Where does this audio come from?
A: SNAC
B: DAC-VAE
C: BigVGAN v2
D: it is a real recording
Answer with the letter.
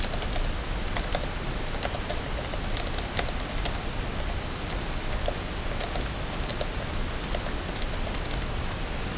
D